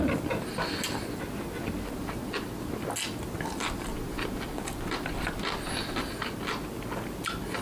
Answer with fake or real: real